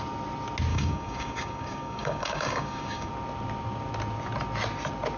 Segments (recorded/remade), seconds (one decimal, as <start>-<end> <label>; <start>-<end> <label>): 0.0-0.7 recorded; 0.7-3.1 remade; 3.1-5.2 recorded